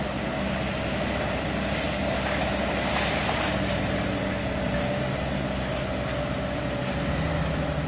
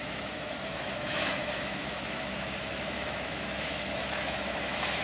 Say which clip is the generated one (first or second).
second